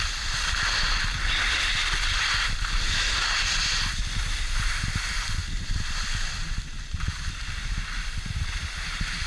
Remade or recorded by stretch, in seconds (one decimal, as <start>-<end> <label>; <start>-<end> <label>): 0.0-9.3 recorded